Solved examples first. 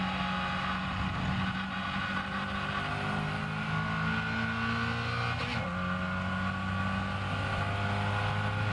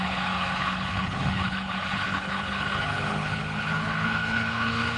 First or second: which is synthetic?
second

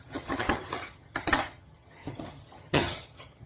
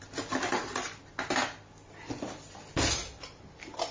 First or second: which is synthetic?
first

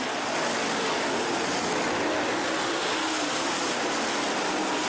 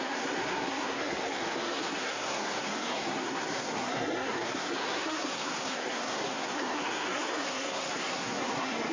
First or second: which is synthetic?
second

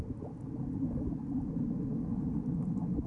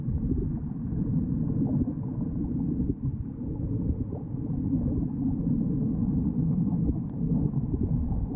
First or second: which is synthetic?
second